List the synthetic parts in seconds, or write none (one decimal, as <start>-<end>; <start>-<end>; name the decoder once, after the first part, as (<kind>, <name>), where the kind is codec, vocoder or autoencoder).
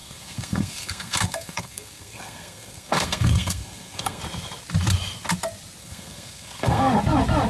0.0-4.2 (codec, SNAC); 5.8-6.8